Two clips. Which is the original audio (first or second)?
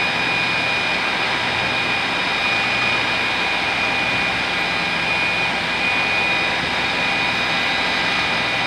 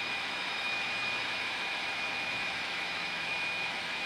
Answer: first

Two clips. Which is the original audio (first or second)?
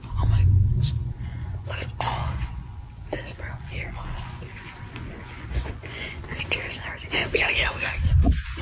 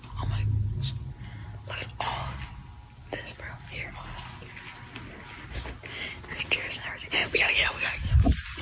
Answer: second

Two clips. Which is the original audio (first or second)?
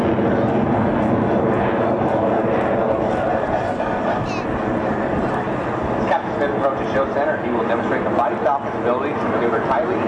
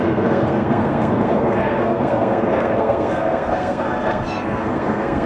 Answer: first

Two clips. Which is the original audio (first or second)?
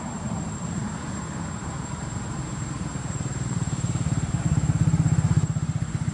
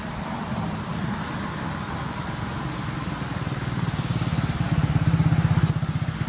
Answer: second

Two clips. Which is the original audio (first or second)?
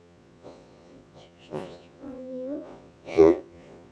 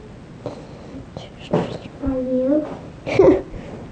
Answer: second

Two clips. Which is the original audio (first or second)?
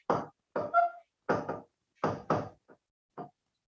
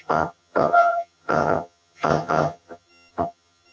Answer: first